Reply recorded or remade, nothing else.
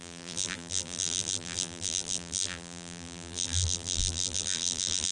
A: remade